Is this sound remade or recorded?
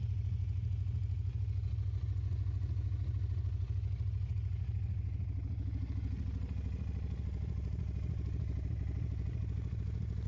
recorded